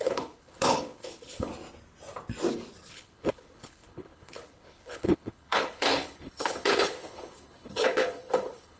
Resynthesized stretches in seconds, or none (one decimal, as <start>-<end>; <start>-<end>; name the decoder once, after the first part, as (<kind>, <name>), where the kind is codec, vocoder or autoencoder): 0.0-1.5 (codec, HILCodec); 2.9-8.8